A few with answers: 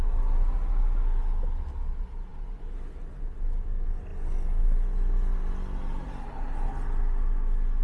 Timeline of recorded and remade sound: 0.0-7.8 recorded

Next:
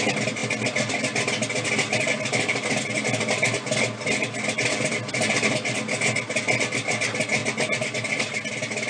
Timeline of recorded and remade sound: 0.0-8.9 recorded

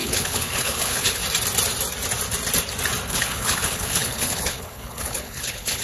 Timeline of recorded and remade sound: 0.0-1.2 remade; 1.2-3.1 recorded; 3.1-5.8 remade

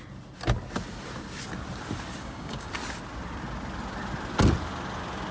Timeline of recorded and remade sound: 0.0-2.2 recorded; 2.2-2.7 remade; 2.7-5.3 recorded

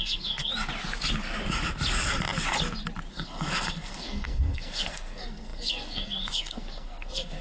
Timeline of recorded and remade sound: 0.0-0.5 remade; 0.5-3.1 recorded; 3.1-7.4 remade